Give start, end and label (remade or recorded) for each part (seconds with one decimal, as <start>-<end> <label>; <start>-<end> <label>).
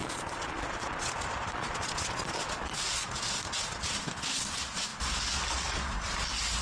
0.0-4.0 remade; 4.0-6.6 recorded